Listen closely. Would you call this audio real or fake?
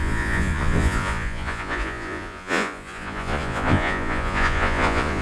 fake